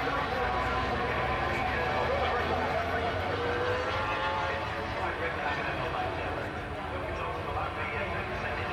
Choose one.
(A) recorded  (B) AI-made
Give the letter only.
A